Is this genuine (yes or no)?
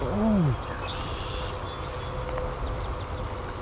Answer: yes